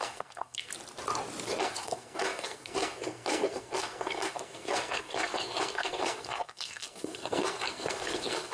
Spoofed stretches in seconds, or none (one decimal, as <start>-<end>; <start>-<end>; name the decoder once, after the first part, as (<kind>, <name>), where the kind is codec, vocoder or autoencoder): 0.0-0.7 (codec, SNAC); 1.6-8.5

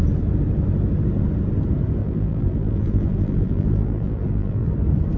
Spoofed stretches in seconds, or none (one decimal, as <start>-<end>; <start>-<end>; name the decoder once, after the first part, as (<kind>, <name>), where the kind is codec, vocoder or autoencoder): 2.0-4.7 (vocoder, BigVGAN v2)

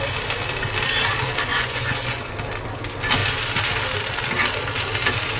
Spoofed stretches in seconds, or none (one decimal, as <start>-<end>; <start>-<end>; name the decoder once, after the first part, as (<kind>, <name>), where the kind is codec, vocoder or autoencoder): 1.5-2.3 (vocoder, Vocos)